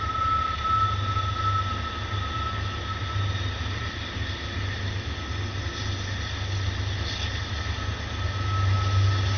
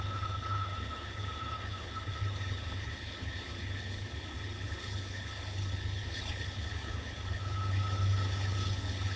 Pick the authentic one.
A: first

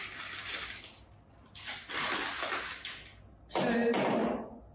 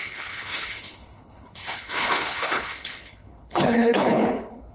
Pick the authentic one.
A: first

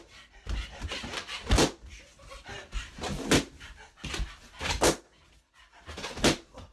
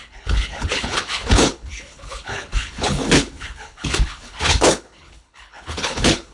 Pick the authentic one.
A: first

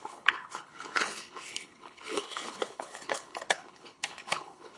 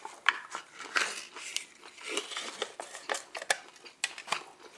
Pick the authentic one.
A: second